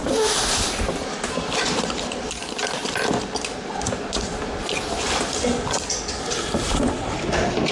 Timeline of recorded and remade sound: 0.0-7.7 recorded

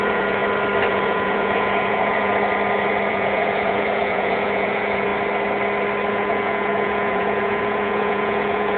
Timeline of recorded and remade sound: 0.0-0.4 remade; 0.4-0.9 recorded; 0.9-2.3 remade; 2.3-3.1 recorded; 3.1-5.1 remade; 5.1-6.1 recorded; 6.1-8.8 remade

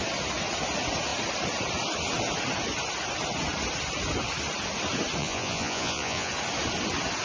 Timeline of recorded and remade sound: 0.0-5.2 recorded; 5.2-6.3 remade; 6.3-7.2 recorded

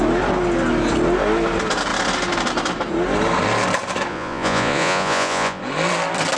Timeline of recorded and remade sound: 0.0-4.1 recorded; 4.1-5.6 remade; 5.6-6.4 recorded

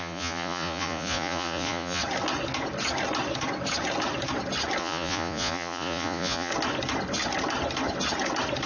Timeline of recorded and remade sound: 0.0-2.0 remade; 2.0-4.8 recorded; 4.8-6.5 remade; 6.5-8.7 recorded